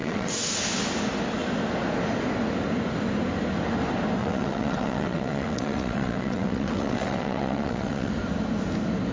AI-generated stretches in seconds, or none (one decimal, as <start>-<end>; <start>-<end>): 0.0-0.5; 4.2-8.1